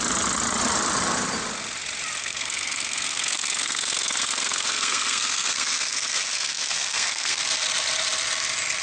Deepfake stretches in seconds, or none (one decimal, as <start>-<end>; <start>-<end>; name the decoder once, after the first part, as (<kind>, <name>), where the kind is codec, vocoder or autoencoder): 2.2-7.4 (codec, SNAC)